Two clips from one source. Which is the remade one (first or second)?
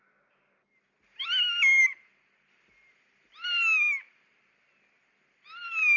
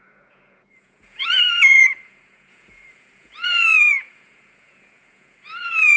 second